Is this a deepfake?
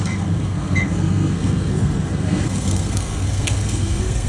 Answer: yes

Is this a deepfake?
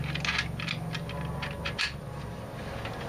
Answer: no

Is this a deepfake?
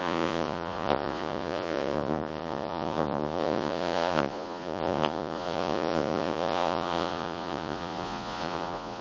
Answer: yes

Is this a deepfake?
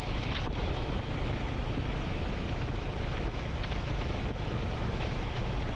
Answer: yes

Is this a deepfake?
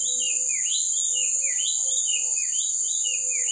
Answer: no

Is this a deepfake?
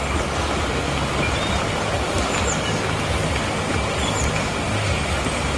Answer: no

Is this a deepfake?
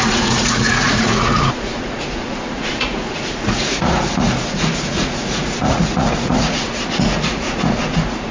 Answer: yes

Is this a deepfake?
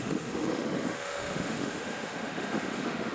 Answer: yes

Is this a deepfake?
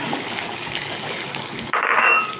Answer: yes